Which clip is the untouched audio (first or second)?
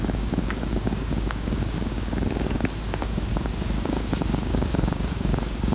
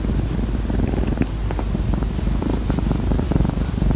second